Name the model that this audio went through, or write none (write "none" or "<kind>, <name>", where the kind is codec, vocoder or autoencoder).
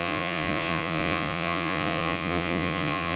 vocoder, Vocos